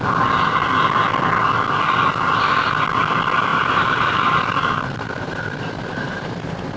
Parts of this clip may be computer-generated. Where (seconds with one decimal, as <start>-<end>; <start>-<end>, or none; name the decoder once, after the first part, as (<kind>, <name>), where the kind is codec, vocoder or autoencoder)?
3.5-6.8 (vocoder, BigVGAN v2)